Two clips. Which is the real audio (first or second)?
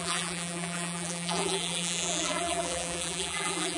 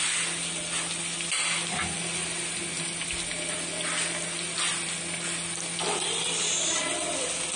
second